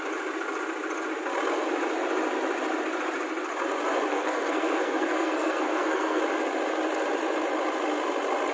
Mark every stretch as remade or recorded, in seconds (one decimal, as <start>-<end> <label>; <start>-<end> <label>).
0.0-4.1 recorded; 4.1-6.2 remade; 6.2-8.5 recorded